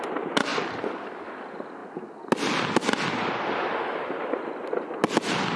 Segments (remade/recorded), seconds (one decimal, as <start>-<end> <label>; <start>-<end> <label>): 0.0-5.6 recorded